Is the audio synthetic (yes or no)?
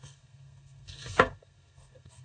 yes